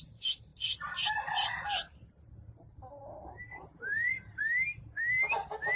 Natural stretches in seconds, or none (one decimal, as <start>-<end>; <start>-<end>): 0.0-3.5; 4.4-5.8

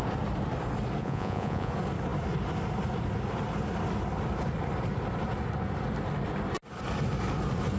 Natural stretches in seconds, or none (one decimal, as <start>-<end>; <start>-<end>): 0.0-1.0; 1.7-7.8

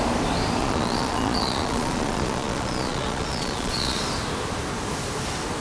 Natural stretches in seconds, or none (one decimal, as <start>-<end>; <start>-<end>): 0.0-0.6; 4.0-5.6